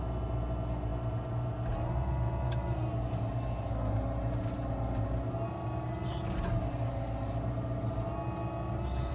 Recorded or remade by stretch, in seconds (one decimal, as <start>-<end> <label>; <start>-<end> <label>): 0.0-9.1 recorded